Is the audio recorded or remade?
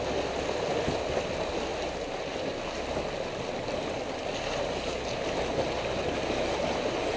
recorded